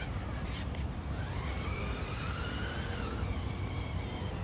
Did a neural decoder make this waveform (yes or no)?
no